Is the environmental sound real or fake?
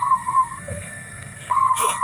fake